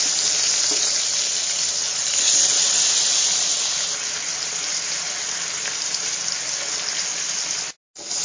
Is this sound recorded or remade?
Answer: recorded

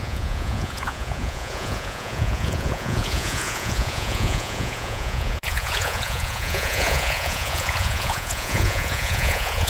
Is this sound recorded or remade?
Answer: remade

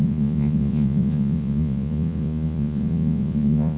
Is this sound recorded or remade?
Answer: remade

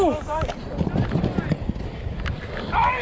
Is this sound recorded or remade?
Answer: recorded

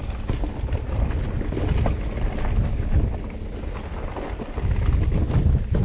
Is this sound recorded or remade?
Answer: recorded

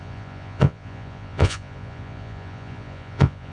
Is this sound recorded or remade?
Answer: remade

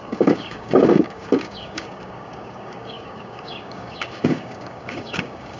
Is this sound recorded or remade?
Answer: remade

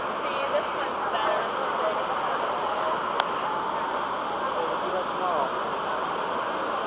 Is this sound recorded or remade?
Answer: recorded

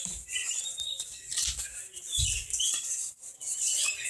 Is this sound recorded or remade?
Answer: recorded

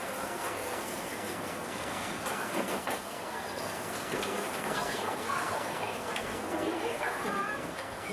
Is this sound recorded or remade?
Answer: remade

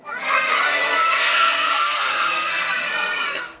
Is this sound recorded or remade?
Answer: remade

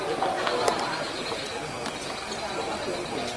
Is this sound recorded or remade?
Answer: recorded